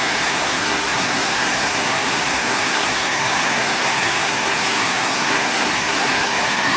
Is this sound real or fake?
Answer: fake